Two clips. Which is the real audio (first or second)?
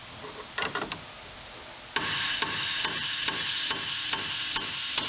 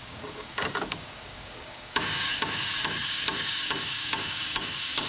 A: first